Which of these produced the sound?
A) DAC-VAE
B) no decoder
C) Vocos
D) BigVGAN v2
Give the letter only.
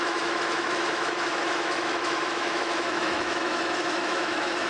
A